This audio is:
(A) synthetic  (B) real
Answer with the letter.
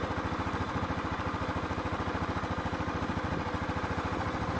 B